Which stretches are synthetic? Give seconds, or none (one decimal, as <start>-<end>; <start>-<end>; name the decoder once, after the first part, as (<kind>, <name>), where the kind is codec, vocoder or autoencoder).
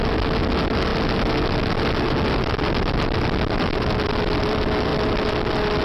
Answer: none